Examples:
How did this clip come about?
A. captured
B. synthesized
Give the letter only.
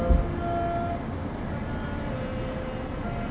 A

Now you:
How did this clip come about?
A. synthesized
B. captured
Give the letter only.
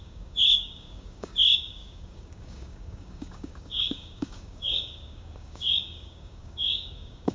A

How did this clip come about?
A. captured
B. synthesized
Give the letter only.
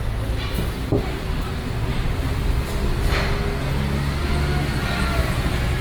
A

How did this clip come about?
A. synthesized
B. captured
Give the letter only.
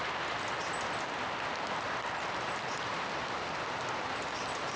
B